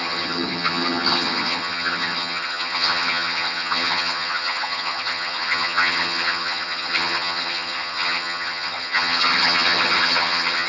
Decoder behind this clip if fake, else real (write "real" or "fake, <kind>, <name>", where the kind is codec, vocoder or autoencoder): fake, vocoder, HiFi-GAN